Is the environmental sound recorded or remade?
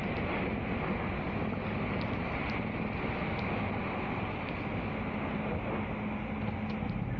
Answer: recorded